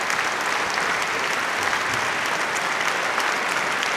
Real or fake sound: real